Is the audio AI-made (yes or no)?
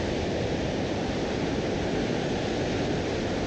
no